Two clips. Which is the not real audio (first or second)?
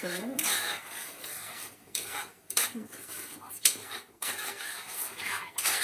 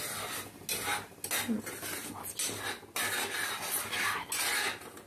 first